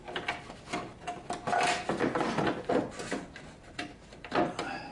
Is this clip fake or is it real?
real